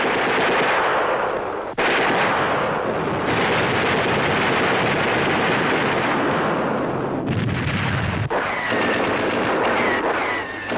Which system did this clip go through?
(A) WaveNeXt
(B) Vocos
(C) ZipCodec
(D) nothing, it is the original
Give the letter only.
D